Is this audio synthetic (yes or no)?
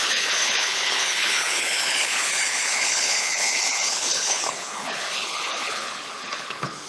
yes